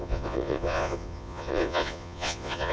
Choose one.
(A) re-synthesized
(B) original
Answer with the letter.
A